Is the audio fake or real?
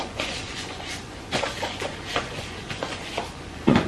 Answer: fake